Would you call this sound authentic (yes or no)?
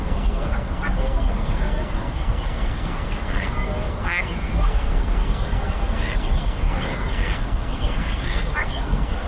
no